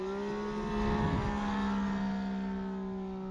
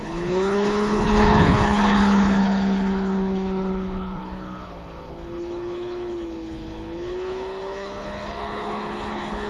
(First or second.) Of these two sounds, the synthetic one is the second